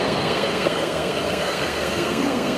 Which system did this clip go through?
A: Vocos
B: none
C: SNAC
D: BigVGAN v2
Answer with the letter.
C